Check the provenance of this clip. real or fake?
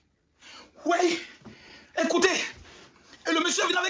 real